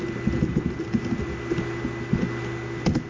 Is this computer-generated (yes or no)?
no